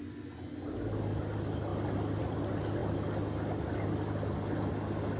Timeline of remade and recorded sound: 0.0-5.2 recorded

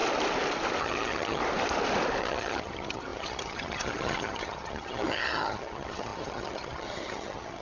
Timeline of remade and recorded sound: 0.0-0.8 recorded; 0.8-1.4 remade; 1.4-2.2 recorded; 2.2-7.6 remade

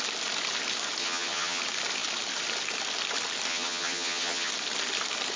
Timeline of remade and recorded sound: 0.0-1.0 recorded; 1.0-1.6 remade; 1.6-3.5 recorded; 3.5-4.5 remade; 4.5-5.4 recorded

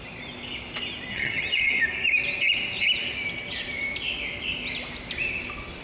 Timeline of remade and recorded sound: 0.0-1.1 recorded; 1.1-1.8 remade; 1.8-5.8 recorded

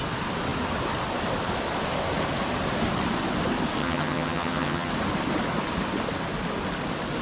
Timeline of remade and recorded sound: 0.0-3.8 recorded; 3.8-4.9 remade; 4.9-7.2 recorded

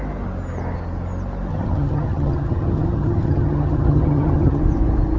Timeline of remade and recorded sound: 0.0-1.5 recorded; 1.5-4.6 remade; 4.6-5.2 recorded

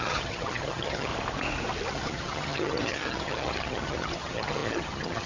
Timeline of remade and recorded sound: 0.0-1.1 remade; 1.1-1.9 recorded; 1.9-5.3 remade

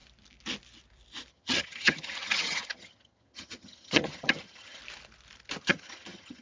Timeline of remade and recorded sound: 0.0-1.3 recorded; 1.3-4.8 remade; 4.8-5.6 recorded; 5.6-6.4 remade